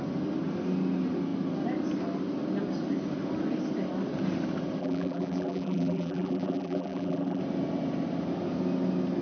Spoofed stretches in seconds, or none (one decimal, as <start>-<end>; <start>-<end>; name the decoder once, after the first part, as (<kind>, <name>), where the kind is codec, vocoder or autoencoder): 4.8-7.4 (vocoder, BigVGAN v2)